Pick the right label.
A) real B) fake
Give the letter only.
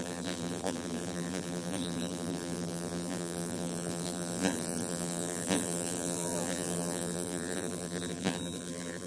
B